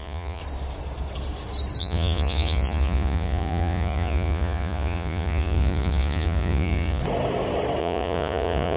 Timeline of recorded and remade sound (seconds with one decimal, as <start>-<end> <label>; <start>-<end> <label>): 0.0-0.4 remade; 0.4-1.8 recorded; 1.8-7.0 remade; 7.0-7.8 recorded; 7.8-8.8 remade